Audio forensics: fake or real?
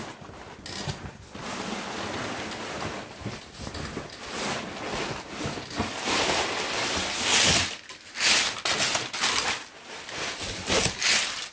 real